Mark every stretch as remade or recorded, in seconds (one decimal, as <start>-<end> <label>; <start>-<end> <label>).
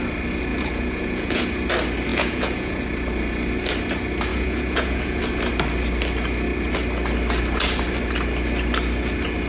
0.0-0.5 recorded; 0.5-1.5 remade; 1.5-2.1 recorded; 2.1-2.8 remade; 2.8-4.3 recorded; 4.3-5.2 remade; 5.2-9.5 recorded